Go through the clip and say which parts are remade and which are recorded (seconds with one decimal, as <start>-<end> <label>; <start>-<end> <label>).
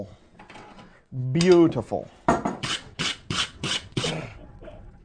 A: 0.0-1.2 remade; 1.2-2.5 recorded; 2.5-5.0 remade